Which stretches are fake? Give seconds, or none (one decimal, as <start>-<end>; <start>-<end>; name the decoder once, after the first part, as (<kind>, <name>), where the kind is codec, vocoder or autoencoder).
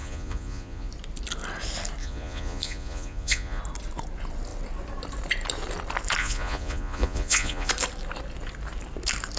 0.0-0.9 (vocoder, Vocos); 2.0-3.6; 6.2-7.7